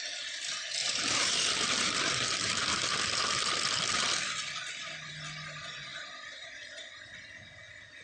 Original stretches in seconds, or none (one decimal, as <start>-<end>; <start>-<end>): 0.0-0.8; 4.0-4.4; 5.1-5.9; 6.9-8.0